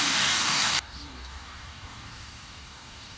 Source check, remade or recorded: remade